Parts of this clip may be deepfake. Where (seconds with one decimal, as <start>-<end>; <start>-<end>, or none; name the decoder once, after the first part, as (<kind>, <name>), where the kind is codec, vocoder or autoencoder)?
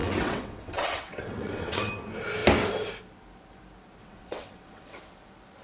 0.0-1.9 (vocoder, WaveNeXt); 4.0-5.0